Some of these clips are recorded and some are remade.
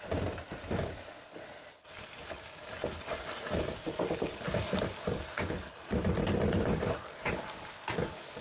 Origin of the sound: recorded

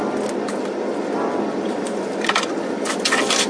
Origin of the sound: recorded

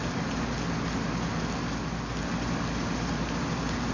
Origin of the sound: recorded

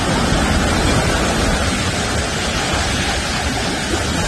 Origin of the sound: recorded